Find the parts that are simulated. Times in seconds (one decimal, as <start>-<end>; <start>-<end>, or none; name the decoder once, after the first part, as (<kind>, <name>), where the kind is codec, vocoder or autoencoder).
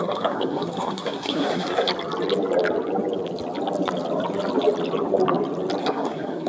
0.0-1.9 (codec, SNAC); 5.8-6.5